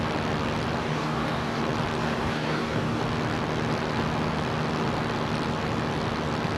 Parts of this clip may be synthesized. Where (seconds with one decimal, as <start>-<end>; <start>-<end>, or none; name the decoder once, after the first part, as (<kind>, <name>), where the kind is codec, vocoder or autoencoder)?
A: 0.8-1.6 (codec, DAC); 2.0-3.0